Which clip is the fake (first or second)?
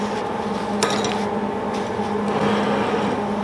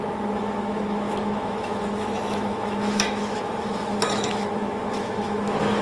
second